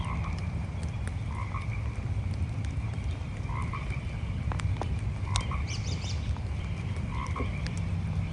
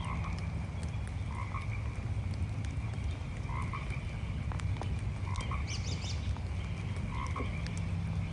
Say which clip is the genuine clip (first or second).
second